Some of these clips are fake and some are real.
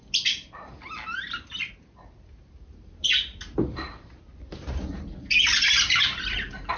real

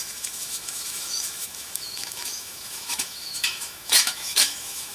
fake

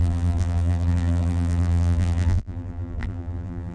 fake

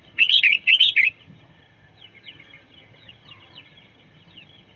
fake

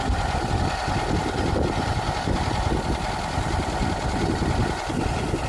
real